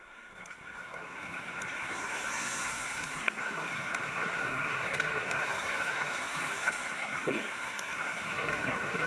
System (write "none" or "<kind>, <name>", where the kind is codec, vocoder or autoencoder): codec, SNAC